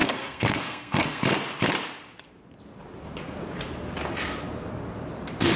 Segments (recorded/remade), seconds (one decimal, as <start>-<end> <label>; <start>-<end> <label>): 0.0-1.2 remade; 1.2-5.6 recorded